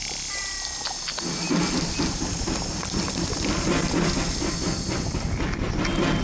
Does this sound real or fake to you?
real